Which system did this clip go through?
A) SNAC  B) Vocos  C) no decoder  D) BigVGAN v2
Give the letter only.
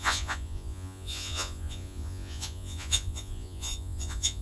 B